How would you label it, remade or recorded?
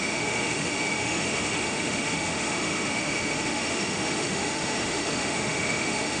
remade